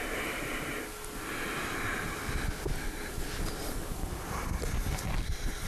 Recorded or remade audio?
recorded